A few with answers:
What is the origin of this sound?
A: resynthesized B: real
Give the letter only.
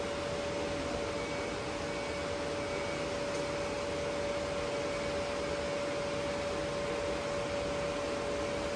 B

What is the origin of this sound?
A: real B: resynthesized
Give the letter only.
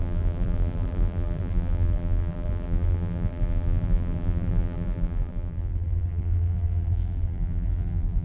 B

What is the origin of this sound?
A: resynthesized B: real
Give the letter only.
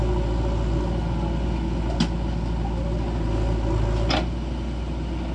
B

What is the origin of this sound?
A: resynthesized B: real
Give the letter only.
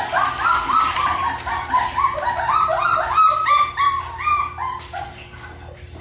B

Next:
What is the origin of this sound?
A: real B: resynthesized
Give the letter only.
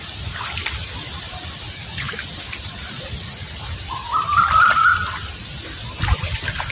A